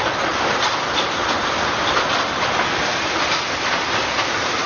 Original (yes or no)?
yes